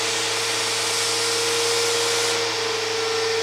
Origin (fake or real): real